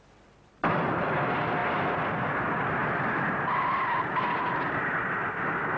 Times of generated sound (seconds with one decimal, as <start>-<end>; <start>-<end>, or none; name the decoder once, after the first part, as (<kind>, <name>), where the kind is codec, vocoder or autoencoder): none